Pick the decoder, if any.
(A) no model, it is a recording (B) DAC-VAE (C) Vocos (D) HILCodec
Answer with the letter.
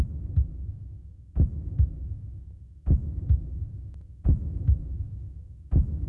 B